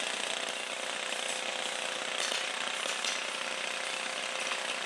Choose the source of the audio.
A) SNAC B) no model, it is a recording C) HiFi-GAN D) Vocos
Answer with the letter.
B